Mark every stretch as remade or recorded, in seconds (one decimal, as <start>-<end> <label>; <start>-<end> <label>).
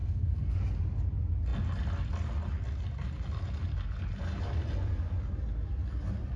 0.0-0.6 remade; 0.6-6.4 recorded